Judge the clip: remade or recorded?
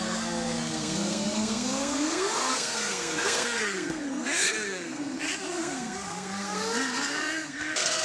remade